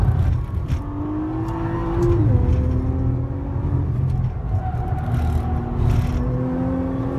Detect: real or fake real